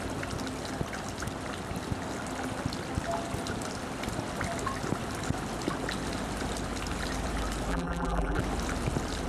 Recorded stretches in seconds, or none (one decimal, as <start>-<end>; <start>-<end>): 0.0-7.7; 8.4-9.3